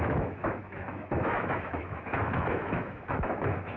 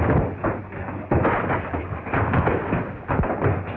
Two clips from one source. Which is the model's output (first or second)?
first